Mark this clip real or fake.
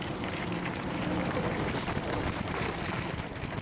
fake